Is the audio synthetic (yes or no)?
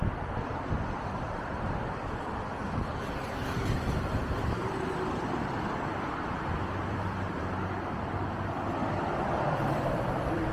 yes